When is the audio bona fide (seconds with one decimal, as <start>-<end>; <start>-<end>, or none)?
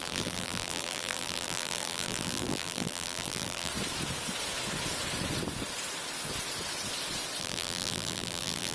3.7-7.4